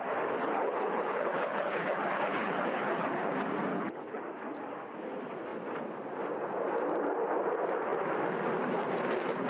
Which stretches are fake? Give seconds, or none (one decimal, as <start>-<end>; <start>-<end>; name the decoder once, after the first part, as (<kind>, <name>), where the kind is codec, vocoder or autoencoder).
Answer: 0.4-3.3 (codec, HILCodec); 3.7-4.2